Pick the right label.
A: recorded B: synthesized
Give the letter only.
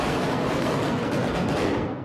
B